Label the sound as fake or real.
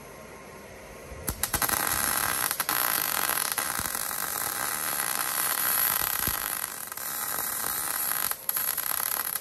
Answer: fake